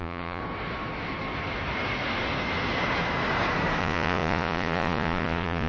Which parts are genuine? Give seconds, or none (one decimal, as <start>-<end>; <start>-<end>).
0.4-3.8